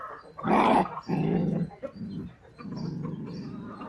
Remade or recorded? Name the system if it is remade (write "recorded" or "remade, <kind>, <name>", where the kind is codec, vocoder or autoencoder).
recorded